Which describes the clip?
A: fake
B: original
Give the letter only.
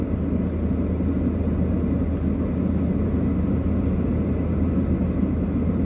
B